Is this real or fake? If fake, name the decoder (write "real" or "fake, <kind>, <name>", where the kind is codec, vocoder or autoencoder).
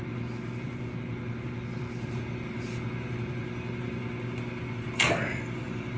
real